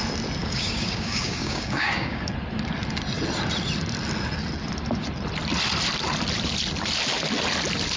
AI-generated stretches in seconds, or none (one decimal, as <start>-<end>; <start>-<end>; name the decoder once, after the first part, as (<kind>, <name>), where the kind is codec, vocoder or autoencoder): 0.4-2.3 (codec, DAC)